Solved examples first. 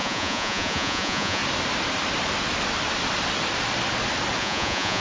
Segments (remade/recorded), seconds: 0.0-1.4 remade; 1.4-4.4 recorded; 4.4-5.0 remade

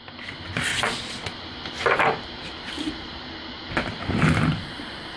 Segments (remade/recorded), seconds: 0.0-0.7 recorded; 0.7-1.3 remade; 1.3-5.2 recorded

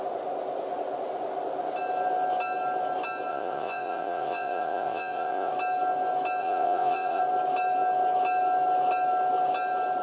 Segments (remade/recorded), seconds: 0.0-3.3 recorded; 3.3-5.5 remade; 5.5-6.4 recorded; 6.4-7.2 remade; 7.2-10.0 recorded

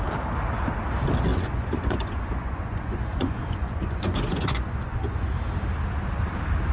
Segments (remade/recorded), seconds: 0.0-1.3 recorded; 1.3-5.3 remade; 5.3-6.7 recorded

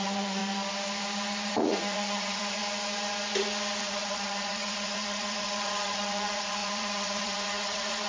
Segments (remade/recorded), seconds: 0.0-0.4 remade; 0.4-1.5 recorded; 1.5-2.6 remade; 2.6-3.8 recorded; 3.8-8.1 remade